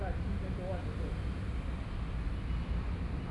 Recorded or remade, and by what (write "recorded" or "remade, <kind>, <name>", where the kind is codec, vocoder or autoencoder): recorded